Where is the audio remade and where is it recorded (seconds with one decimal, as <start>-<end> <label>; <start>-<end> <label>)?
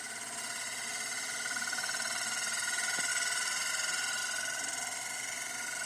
0.0-3.1 recorded; 3.1-3.7 remade; 3.7-5.9 recorded